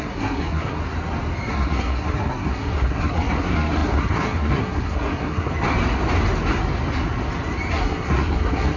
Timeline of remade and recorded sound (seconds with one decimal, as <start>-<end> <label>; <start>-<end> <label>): 0.0-0.8 remade; 0.8-1.5 recorded; 1.5-5.5 remade; 5.5-7.7 recorded; 7.7-8.8 remade